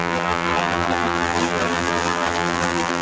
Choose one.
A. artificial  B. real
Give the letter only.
A